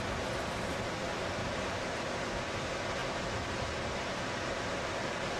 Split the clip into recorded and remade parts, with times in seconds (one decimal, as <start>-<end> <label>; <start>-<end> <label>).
0.0-1.4 recorded; 1.4-2.0 remade; 2.0-5.4 recorded